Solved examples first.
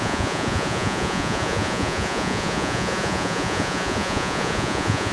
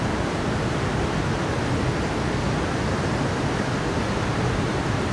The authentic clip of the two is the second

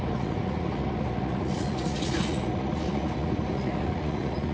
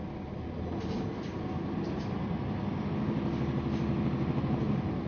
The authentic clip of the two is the second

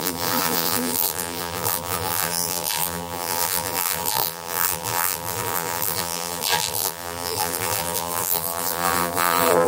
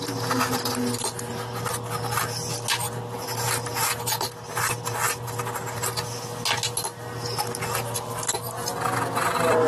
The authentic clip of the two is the second